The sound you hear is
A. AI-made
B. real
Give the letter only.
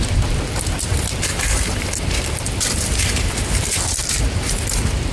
A